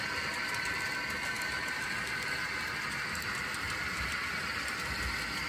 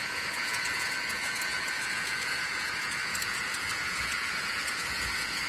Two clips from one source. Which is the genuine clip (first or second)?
first